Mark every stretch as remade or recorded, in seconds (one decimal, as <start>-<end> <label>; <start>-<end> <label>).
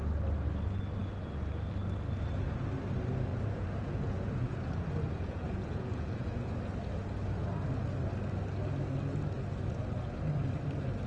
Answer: 0.0-3.3 recorded; 3.3-6.6 remade; 6.6-11.1 recorded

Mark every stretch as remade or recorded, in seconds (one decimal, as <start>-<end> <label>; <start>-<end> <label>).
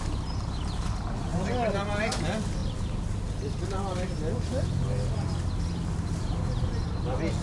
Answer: 0.0-7.4 recorded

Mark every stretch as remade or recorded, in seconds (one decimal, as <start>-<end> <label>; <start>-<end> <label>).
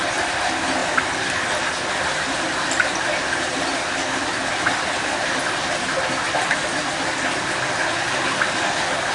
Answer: 0.0-9.1 recorded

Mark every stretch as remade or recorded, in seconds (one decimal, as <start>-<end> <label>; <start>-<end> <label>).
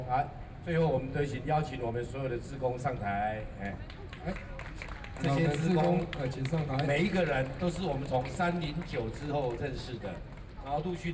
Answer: 0.0-1.1 recorded; 1.1-1.9 remade; 1.9-11.1 recorded